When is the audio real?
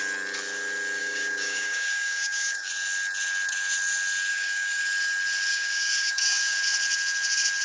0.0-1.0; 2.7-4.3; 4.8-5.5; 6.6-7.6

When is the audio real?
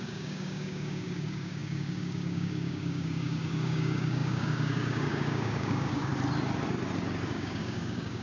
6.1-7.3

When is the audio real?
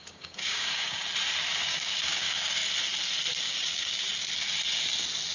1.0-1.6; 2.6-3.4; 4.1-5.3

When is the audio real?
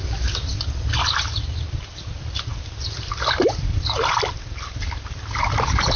0.0-6.0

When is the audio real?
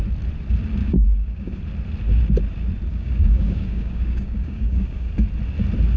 0.0-0.8; 1.6-2.9; 5.1-6.0